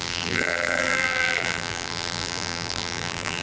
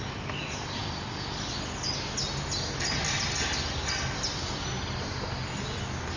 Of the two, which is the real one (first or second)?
second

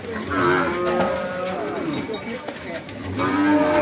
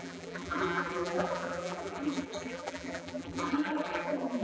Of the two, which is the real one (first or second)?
first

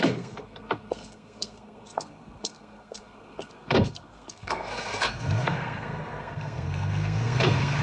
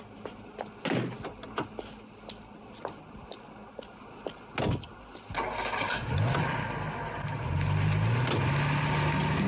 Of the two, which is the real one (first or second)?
second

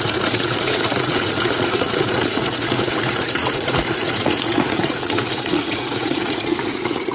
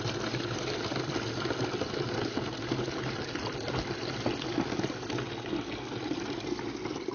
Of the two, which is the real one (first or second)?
second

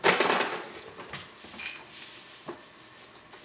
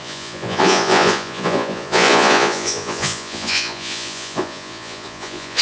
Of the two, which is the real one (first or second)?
first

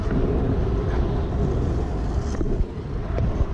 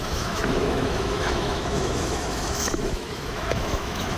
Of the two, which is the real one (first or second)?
first